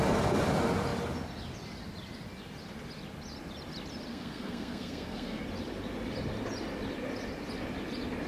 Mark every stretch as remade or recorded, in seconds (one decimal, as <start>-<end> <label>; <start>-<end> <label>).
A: 0.0-4.1 recorded; 4.1-5.4 remade; 5.4-8.3 recorded